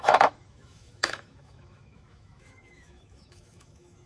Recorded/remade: remade